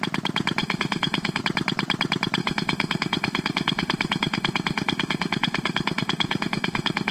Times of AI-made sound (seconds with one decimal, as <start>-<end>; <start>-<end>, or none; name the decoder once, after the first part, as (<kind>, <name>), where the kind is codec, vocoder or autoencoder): 0.6-1.4 (autoencoder, DAC-VAE); 2.4-7.1